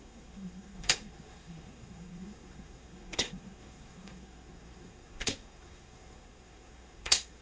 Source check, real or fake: fake